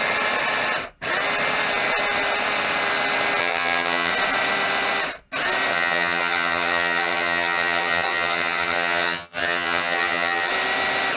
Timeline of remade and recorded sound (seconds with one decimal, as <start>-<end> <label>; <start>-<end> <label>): 0.0-3.4 recorded; 3.4-4.1 remade; 4.1-5.7 recorded; 5.7-10.5 remade; 10.5-11.2 recorded